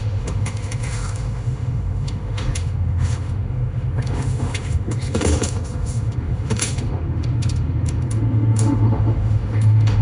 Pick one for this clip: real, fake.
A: fake